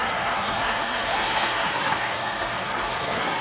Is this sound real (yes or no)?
no